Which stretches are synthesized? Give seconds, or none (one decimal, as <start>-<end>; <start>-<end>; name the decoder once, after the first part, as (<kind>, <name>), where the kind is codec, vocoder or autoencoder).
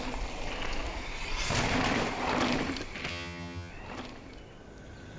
3.1-3.7 (vocoder, HiFi-GAN)